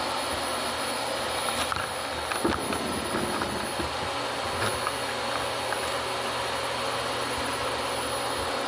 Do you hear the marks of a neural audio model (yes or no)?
no